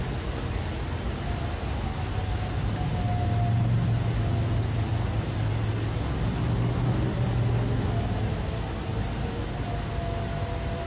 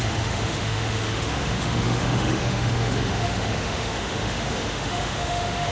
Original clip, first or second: first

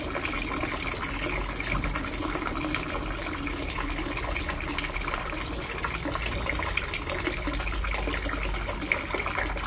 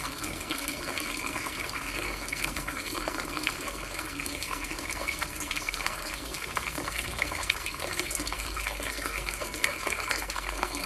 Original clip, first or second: first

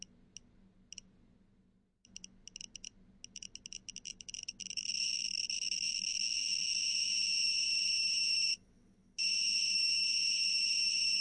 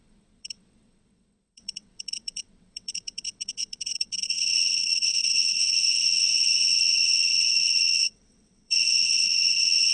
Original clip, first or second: first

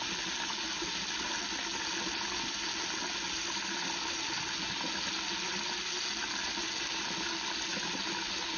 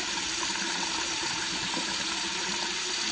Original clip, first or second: first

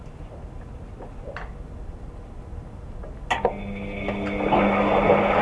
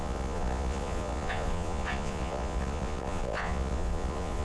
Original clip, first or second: first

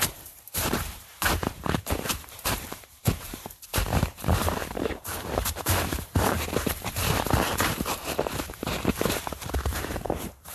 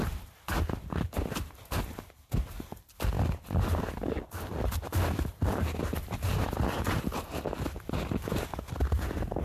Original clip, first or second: second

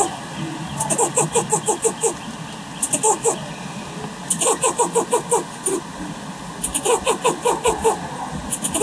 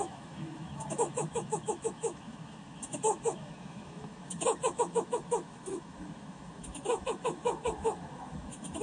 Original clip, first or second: first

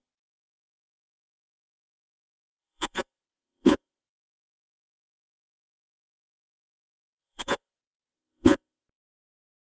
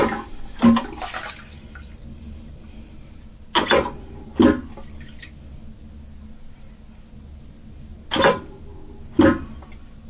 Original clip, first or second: second